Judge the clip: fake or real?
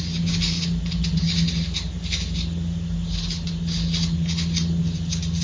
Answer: real